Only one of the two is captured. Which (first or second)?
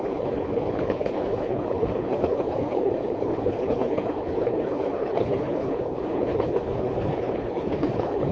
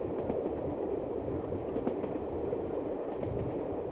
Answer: second